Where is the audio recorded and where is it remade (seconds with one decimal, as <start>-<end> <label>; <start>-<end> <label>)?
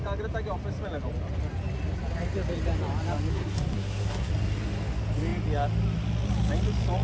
0.0-3.3 recorded; 3.3-4.3 remade; 4.3-7.0 recorded